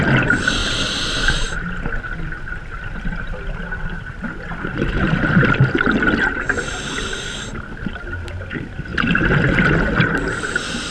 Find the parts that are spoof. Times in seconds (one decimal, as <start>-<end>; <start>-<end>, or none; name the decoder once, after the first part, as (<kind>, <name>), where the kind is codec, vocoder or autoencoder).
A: none